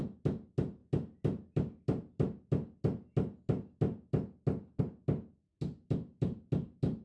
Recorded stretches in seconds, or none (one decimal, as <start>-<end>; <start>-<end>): 0.0-7.0